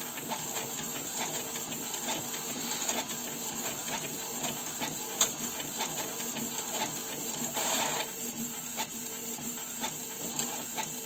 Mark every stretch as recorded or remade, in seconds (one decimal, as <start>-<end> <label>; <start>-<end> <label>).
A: 0.0-0.9 recorded; 0.9-1.5 remade; 1.5-11.1 recorded